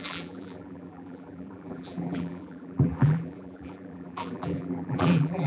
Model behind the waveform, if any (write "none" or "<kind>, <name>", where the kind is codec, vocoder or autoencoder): vocoder, BigVGAN v2